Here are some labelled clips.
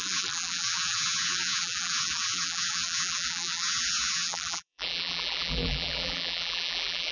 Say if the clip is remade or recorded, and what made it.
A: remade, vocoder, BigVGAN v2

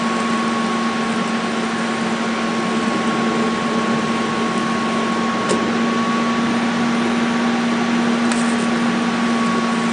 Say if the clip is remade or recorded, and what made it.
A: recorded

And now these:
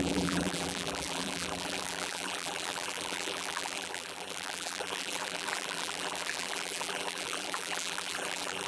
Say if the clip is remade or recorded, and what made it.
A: remade, vocoder, BigVGAN v2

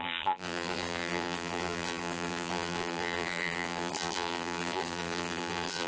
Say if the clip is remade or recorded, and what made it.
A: remade, vocoder, BigVGAN v2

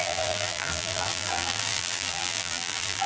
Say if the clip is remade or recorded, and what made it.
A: remade, vocoder, BigVGAN v2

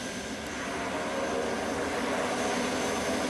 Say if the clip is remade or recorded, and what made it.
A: recorded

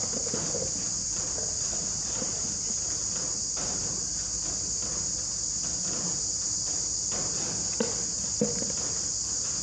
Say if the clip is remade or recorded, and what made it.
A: recorded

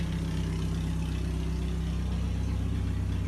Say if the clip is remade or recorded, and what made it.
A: recorded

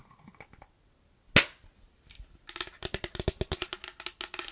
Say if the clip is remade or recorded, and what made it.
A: recorded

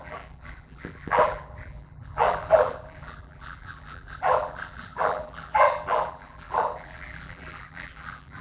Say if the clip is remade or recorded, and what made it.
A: remade, vocoder, BigVGAN v2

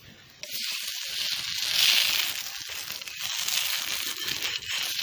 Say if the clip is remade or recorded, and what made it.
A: recorded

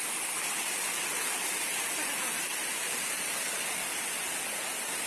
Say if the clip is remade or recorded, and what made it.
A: recorded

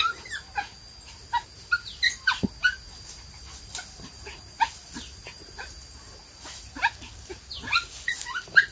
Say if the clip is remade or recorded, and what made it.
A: recorded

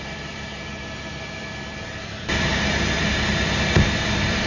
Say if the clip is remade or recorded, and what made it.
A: remade, vocoder, BigVGAN v2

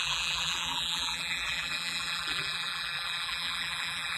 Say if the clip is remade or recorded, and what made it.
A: remade, vocoder, BigVGAN v2